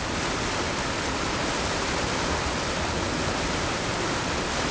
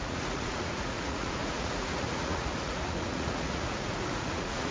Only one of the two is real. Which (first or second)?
first